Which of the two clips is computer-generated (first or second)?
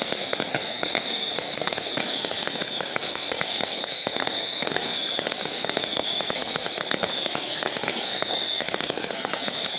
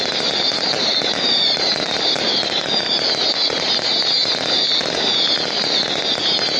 first